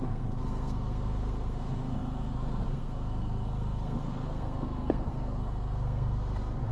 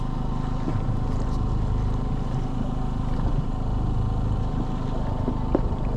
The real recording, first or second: second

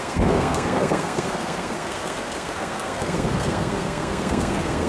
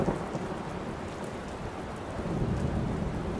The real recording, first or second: second